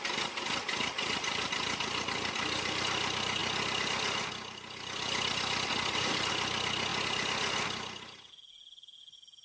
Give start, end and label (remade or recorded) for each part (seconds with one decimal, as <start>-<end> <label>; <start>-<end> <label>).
0.0-9.4 recorded